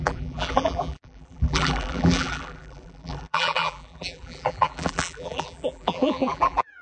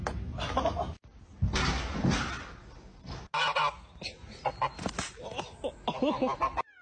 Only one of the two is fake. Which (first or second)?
first